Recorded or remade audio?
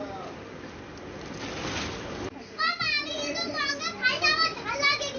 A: recorded